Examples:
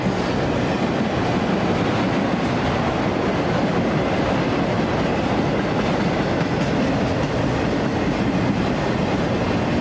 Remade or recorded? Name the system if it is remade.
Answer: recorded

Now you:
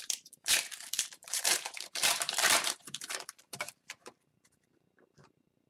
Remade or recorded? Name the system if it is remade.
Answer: remade, vocoder, BigVGAN v2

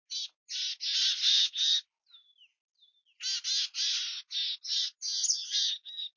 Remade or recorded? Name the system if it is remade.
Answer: recorded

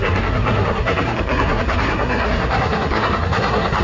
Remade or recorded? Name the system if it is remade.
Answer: remade, codec, SNAC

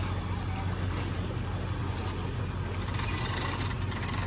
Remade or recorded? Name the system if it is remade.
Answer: recorded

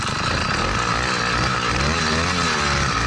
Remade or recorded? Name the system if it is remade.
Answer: recorded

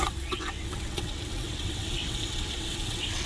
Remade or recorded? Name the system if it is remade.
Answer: remade, vocoder, WaveNeXt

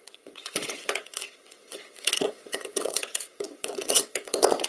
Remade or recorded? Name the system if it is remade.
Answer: remade, vocoder, WaveNeXt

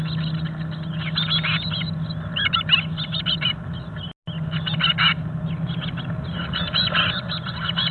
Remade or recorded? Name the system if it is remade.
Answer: recorded